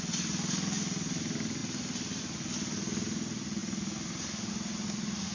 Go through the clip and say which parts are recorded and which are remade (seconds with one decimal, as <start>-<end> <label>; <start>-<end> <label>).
0.0-5.3 recorded